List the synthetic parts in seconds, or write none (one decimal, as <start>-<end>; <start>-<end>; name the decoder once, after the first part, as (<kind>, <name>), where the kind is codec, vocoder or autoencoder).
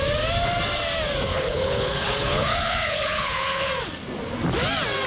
1.3-3.7 (codec, HILCodec)